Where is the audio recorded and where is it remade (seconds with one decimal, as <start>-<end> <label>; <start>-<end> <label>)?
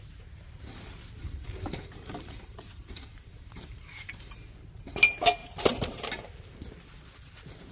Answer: 0.0-1.2 recorded; 1.2-4.8 remade; 4.8-5.4 recorded; 5.4-6.6 remade; 6.6-7.7 recorded